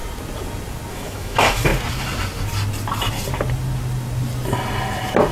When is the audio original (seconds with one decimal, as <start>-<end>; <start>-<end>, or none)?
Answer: 0.0-0.9; 1.7-5.3